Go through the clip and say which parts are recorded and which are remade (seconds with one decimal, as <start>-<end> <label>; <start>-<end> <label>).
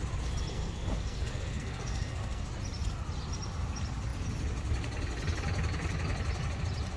0.0-0.5 recorded; 0.5-2.4 remade; 2.4-7.0 recorded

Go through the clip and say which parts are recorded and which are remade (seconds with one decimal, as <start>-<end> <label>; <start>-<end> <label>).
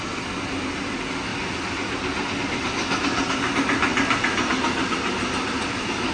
0.0-6.1 recorded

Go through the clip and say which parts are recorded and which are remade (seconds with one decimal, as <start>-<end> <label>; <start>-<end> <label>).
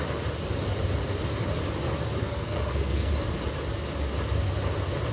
0.0-2.2 recorded; 2.2-3.1 remade; 3.1-5.1 recorded